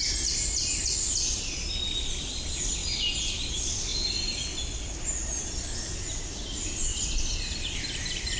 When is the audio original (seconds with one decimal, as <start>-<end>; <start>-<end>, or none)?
0.0-8.4